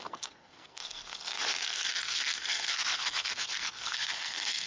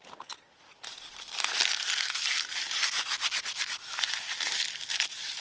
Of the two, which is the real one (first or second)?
second